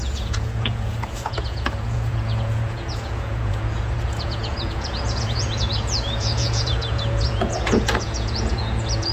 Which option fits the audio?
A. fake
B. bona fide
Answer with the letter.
A